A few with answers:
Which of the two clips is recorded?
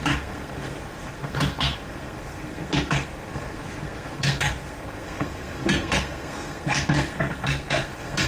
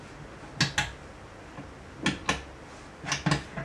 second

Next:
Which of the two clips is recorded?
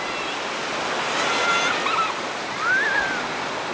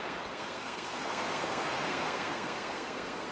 first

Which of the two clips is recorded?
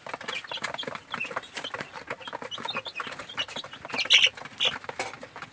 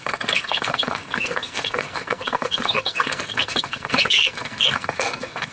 first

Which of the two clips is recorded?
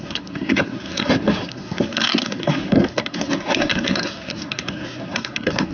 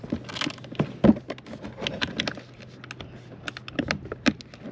second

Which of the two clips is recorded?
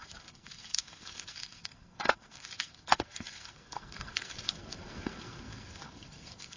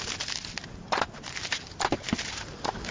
second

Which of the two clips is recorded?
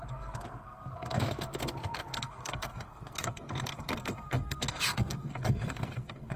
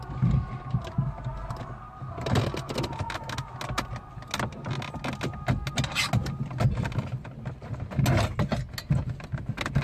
second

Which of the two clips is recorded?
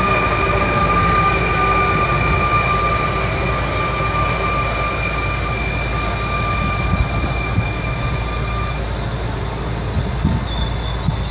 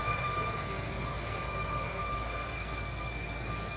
first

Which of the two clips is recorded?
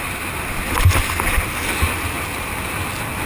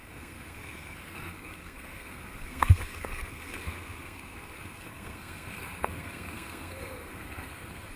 first